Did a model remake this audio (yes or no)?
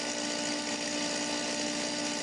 no